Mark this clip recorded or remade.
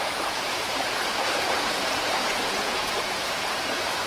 remade